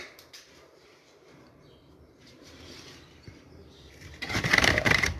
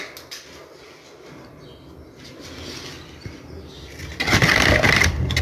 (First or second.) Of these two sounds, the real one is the second